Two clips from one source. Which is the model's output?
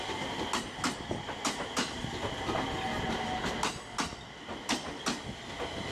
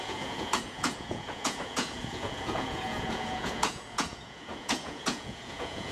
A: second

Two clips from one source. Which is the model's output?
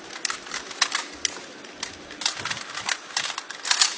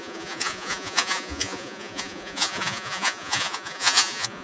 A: second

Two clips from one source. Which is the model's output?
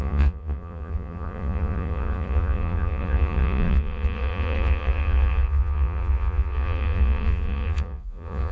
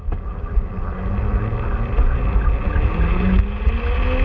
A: first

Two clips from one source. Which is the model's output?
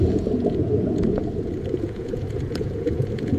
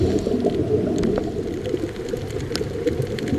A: first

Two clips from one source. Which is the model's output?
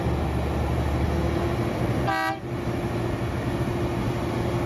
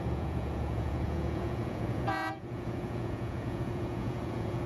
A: second